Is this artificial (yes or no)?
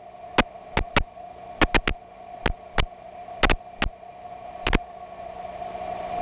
no